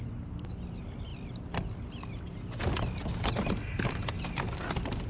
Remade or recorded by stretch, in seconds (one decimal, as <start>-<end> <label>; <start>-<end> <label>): 0.0-5.1 recorded